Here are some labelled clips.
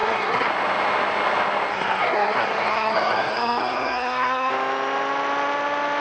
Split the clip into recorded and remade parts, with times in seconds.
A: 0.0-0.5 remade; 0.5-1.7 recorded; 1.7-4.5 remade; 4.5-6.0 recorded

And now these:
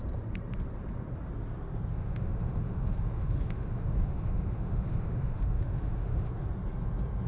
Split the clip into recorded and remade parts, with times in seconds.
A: 0.0-1.9 recorded; 1.9-6.3 remade; 6.3-7.3 recorded

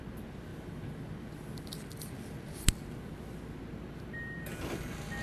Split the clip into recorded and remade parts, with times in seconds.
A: 0.0-5.2 recorded

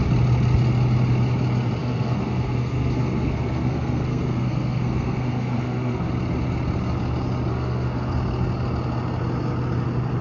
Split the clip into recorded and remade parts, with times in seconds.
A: 0.0-1.8 recorded; 1.8-6.1 remade; 6.1-7.5 recorded; 7.5-8.1 remade; 8.1-10.2 recorded

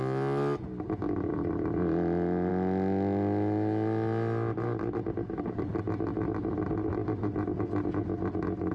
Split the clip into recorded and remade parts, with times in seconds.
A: 0.0-8.7 recorded

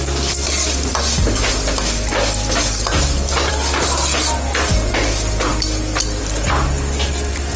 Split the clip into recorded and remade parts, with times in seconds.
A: 0.0-7.6 recorded

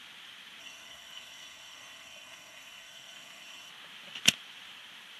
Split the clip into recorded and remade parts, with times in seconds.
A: 0.0-0.6 recorded; 0.6-3.7 remade; 3.7-5.2 recorded

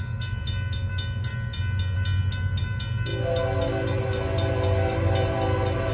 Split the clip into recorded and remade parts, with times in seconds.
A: 0.0-5.9 recorded